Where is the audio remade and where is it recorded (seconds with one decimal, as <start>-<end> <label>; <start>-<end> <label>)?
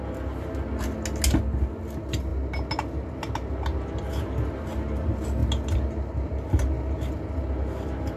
0.0-8.2 recorded